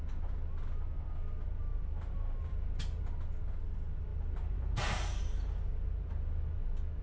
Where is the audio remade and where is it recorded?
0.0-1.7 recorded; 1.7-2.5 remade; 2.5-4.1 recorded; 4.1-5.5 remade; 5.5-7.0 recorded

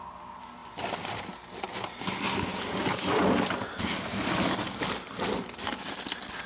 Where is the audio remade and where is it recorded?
0.0-6.5 recorded

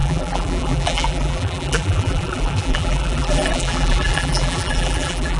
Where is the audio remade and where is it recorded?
0.0-5.4 remade

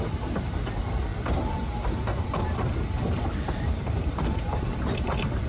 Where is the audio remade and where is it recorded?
0.0-5.5 remade

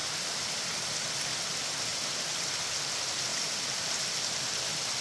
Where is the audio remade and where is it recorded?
0.0-3.3 recorded; 3.3-4.3 remade; 4.3-5.0 recorded

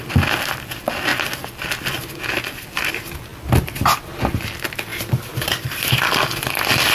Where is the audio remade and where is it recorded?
0.0-4.9 recorded; 4.9-5.8 remade; 5.8-6.9 recorded

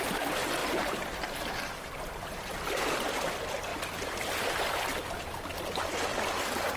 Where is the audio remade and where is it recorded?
0.0-0.6 recorded; 0.6-3.2 remade; 3.2-6.8 recorded